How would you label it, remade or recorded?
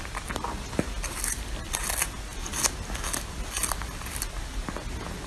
recorded